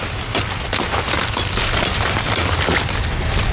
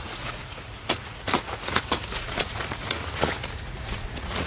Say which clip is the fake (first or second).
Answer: second